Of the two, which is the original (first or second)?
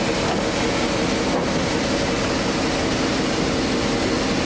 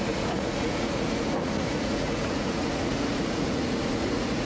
first